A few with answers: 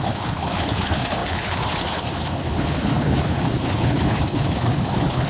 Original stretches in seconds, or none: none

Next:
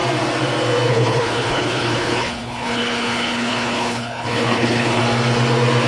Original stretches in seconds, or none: 0.0-0.9; 5.0-5.9